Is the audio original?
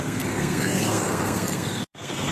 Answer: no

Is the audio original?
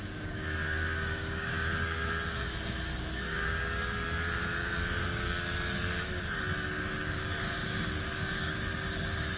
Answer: no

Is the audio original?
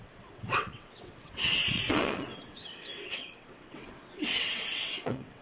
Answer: no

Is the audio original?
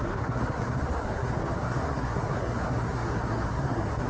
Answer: no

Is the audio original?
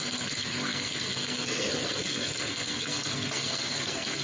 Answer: no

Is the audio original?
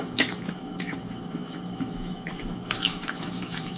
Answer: no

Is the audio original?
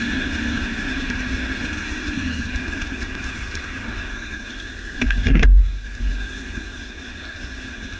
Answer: no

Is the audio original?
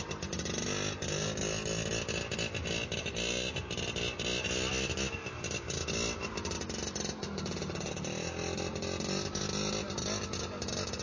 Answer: yes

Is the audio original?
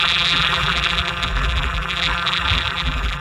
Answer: no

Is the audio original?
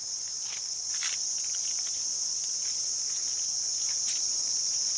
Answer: yes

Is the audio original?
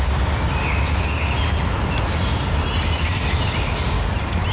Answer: yes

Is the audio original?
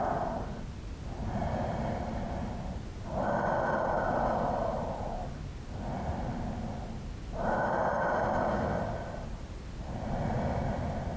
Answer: yes